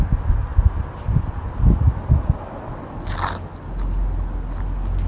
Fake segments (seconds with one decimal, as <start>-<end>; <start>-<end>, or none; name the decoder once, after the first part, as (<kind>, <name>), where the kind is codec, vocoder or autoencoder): none